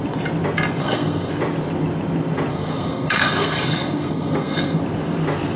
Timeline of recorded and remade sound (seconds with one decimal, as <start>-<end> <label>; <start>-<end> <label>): 0.0-0.8 recorded; 0.8-1.3 remade; 1.3-2.5 recorded; 2.5-4.8 remade; 4.8-5.6 recorded